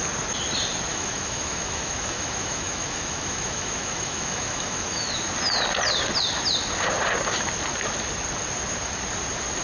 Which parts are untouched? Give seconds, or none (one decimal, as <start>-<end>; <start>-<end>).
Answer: 0.0-0.9; 5.2-9.6